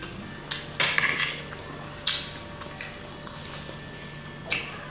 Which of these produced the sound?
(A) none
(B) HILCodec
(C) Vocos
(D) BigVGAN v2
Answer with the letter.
A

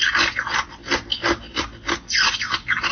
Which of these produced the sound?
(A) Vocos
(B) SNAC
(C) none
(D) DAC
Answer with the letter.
C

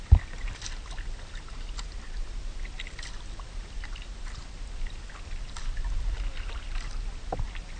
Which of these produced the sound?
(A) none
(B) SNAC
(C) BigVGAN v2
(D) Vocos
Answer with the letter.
A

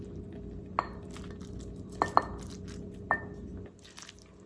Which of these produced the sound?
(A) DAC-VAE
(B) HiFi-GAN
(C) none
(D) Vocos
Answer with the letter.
C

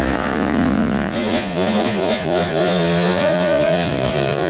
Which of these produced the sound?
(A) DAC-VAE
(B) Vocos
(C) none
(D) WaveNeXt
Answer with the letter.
B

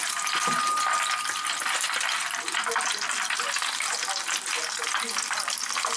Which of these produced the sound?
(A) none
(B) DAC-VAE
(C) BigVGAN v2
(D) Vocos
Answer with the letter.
A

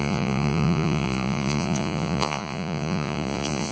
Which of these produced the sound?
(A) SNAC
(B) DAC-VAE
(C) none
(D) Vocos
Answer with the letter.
D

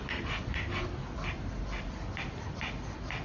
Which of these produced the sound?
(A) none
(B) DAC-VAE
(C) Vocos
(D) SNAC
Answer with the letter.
A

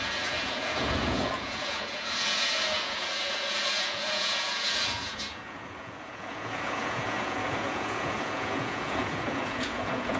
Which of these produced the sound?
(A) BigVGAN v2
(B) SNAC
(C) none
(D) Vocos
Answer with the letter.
D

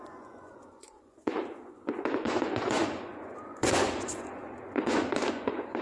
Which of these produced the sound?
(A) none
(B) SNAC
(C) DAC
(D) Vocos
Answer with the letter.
D